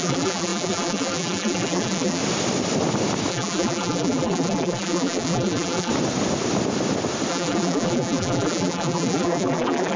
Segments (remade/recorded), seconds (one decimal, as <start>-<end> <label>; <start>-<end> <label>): 0.0-2.2 remade; 2.2-3.3 recorded; 3.3-5.9 remade; 5.9-7.3 recorded; 7.3-10.0 remade